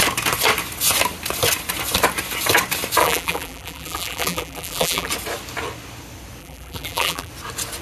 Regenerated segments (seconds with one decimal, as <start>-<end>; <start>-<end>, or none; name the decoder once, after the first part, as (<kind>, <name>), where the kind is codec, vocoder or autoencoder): 3.0-5.1 (vocoder, BigVGAN v2); 6.4-7.3